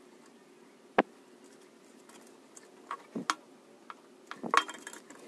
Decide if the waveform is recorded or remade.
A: recorded